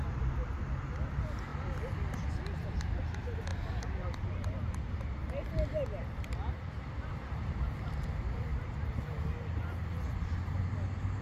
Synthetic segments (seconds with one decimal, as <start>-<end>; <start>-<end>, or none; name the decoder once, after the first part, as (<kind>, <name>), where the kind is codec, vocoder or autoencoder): 1.5-2.3 (vocoder, BigVGAN v2)